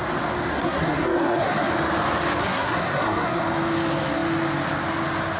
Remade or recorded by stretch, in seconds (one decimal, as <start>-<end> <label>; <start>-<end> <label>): 0.0-0.5 recorded; 0.5-1.7 remade; 1.7-2.4 recorded; 2.4-3.4 remade; 3.4-5.4 recorded